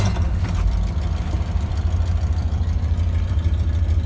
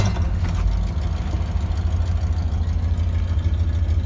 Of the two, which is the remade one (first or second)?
first